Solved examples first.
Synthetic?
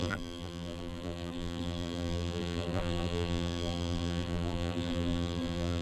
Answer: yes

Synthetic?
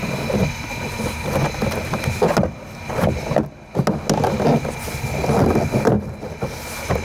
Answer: no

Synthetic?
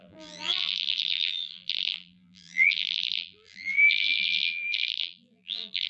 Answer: yes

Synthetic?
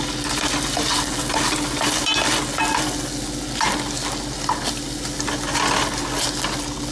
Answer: no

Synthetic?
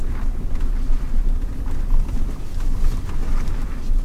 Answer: no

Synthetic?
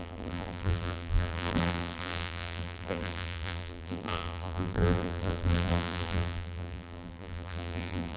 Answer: yes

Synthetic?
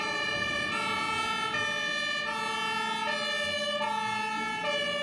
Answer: no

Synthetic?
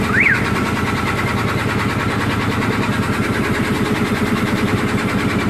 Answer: no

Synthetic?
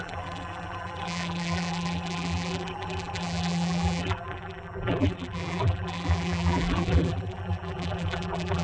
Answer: yes